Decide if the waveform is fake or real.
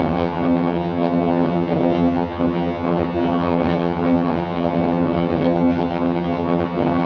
fake